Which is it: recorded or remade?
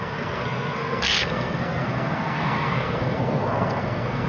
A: remade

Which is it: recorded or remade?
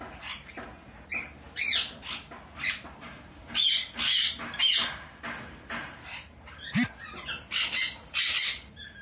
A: recorded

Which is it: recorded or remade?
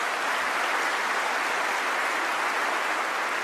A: recorded